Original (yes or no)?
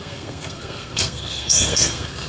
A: no